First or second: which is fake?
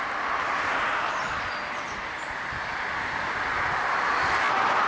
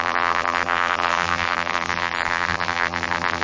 second